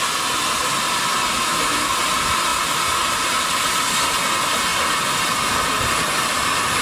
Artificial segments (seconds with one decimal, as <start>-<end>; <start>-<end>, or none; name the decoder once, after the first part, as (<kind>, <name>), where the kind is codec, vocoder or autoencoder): 1.4-2.0 (autoencoder, DAC-VAE)